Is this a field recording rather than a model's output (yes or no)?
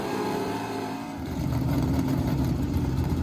no